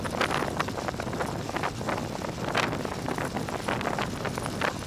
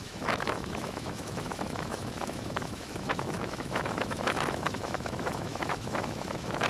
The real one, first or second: first